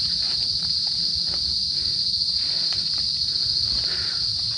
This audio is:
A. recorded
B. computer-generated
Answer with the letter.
A